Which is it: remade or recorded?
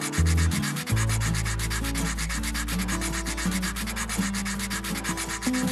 recorded